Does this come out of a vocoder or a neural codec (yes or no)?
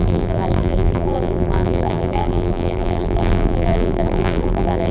yes